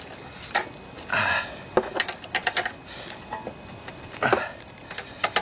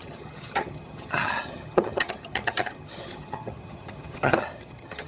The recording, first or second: first